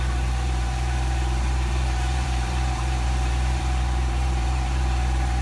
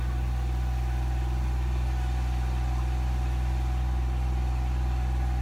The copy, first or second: first